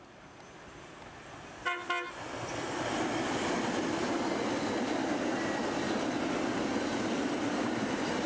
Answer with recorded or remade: recorded